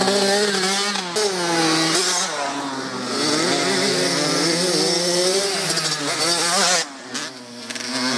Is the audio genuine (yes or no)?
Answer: yes